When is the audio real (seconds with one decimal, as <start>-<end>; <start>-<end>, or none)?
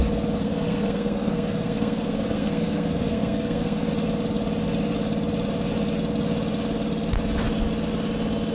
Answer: 0.0-0.4; 3.9-8.5